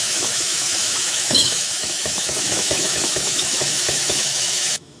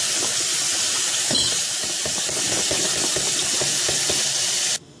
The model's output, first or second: first